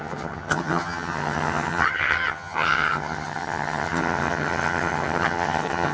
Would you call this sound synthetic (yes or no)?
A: yes